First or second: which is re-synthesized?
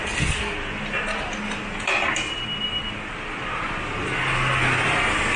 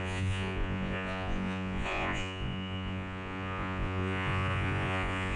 second